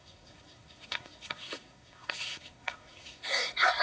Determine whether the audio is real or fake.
fake